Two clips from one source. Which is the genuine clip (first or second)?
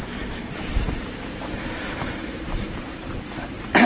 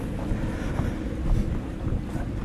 second